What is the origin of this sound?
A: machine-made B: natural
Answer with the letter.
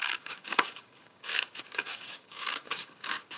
A